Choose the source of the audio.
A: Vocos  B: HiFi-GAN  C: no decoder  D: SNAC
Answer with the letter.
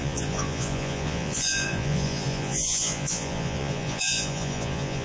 A